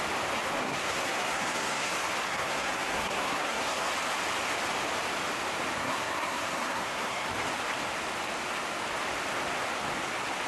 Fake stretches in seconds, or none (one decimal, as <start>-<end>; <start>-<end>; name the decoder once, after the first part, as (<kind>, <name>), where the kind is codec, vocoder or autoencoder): 0.6-1.9 (codec, SNAC); 2.3-3.9; 5.8-7.3